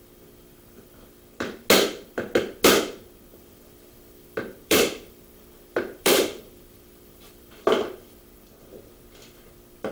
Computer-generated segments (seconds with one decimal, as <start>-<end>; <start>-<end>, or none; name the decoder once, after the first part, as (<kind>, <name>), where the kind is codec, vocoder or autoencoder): 3.3-8.2 (vocoder, BigVGAN v2)